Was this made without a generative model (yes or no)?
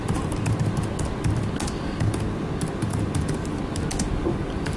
yes